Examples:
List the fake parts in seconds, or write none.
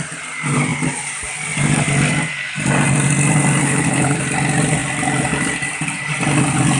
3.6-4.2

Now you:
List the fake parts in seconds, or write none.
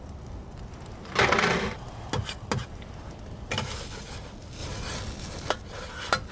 none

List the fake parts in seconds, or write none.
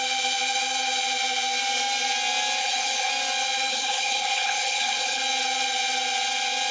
2.6-3.1; 3.7-5.2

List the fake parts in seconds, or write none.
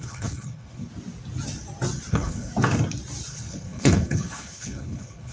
0.0-0.9; 2.1-2.5; 3.3-5.3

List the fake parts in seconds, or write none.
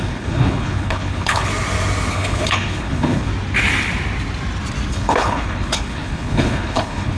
0.0-1.5; 2.1-3.3; 4.9-7.2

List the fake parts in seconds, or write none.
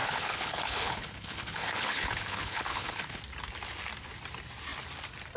0.0-3.2